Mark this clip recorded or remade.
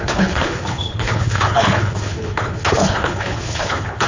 remade